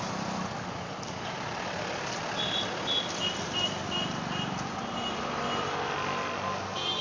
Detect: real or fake real